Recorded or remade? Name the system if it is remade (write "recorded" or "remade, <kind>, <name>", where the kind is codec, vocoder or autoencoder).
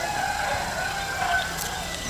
recorded